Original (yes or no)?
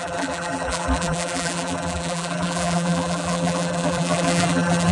no